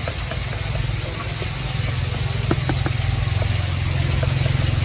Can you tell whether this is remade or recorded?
recorded